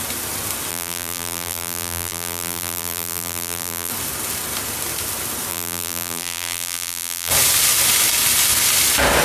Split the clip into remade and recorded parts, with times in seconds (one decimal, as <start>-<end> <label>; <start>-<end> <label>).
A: 0.0-0.7 recorded; 0.7-3.9 remade; 3.9-5.5 recorded; 5.5-7.3 remade; 7.3-9.2 recorded

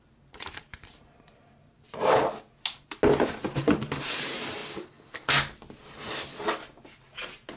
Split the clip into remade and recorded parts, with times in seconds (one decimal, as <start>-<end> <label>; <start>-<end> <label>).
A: 0.0-2.2 remade; 2.2-3.5 recorded; 3.5-4.6 remade; 4.6-7.6 recorded

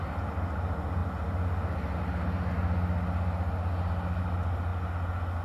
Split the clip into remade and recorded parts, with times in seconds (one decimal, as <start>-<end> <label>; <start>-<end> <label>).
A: 0.0-5.4 recorded